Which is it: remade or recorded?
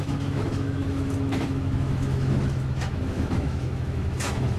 remade